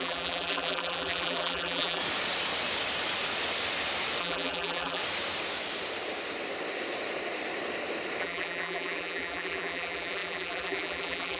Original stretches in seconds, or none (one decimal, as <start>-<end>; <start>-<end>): 2.0-4.2; 5.0-8.2